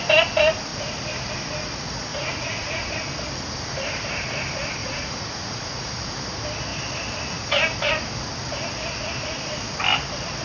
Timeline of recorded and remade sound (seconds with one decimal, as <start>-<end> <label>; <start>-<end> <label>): 0.0-2.1 recorded; 2.1-2.9 remade; 2.9-4.8 recorded; 4.8-5.9 remade; 5.9-10.4 recorded